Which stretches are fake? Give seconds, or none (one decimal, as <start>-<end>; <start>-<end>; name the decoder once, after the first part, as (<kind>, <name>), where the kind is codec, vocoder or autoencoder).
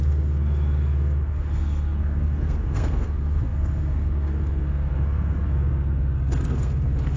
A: 0.0-7.2 (codec, SNAC)